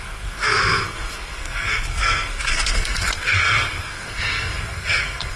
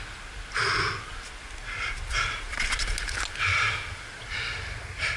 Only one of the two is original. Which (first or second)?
second